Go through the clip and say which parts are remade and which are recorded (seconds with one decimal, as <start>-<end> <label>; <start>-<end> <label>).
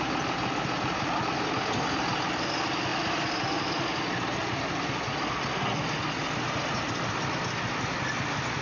0.0-8.6 recorded